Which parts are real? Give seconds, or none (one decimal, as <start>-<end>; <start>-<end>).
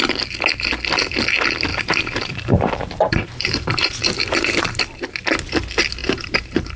0.0-1.7; 4.8-6.0